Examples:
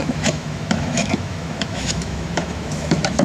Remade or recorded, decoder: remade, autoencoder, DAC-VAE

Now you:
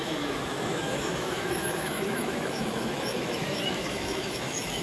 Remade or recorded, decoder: remade, autoencoder, DAC-VAE